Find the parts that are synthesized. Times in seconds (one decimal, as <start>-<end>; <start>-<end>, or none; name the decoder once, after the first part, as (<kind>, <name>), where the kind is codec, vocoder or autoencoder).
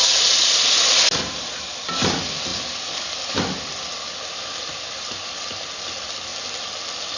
none